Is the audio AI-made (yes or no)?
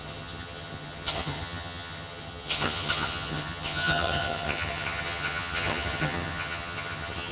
yes